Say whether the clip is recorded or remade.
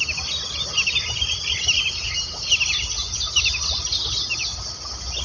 recorded